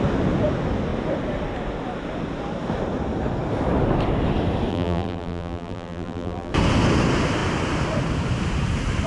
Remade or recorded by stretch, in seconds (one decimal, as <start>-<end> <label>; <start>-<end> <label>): 0.0-4.7 recorded; 4.7-6.5 remade; 6.5-9.1 recorded